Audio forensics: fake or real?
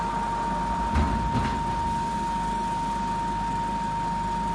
real